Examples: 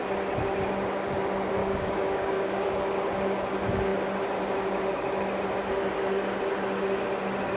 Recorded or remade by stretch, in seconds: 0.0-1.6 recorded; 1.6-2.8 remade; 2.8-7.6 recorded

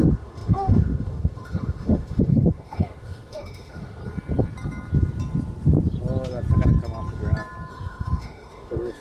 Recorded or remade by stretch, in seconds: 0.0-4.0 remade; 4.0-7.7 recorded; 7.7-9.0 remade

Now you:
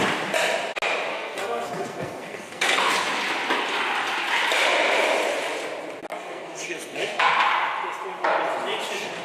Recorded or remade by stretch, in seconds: 0.0-1.1 recorded; 1.1-2.9 remade; 2.9-6.1 recorded; 6.1-7.5 remade; 7.5-9.2 recorded

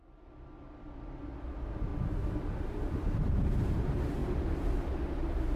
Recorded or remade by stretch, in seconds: 0.0-1.9 recorded; 1.9-3.8 remade; 3.8-5.6 recorded

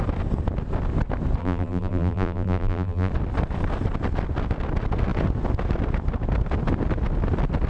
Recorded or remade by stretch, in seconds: 0.0-1.4 recorded; 1.4-3.1 remade; 3.1-7.7 recorded